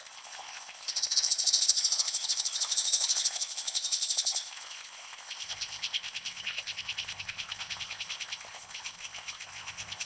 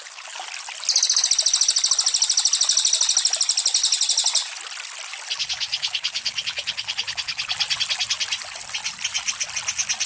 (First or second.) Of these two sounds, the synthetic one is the first